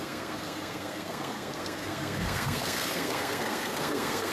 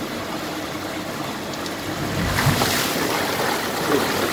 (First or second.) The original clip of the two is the second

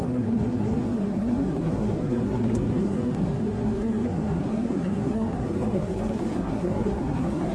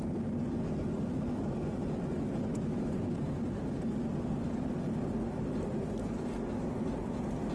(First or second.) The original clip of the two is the second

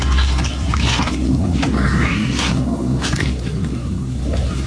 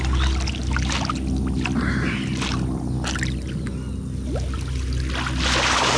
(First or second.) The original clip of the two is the second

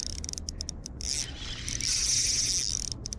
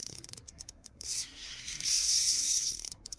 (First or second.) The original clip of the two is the first